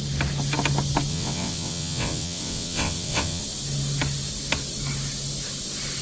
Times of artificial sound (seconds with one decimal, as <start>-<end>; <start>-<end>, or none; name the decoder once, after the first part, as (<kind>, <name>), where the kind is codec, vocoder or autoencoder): 1.1-3.4 (vocoder, WaveNeXt)